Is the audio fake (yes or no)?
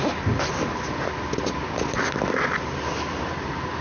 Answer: no